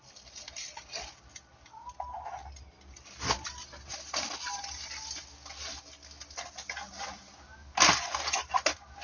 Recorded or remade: recorded